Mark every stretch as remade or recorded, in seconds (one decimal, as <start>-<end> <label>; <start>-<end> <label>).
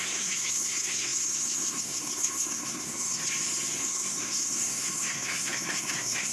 0.0-3.2 remade; 3.2-3.8 recorded; 3.8-6.3 remade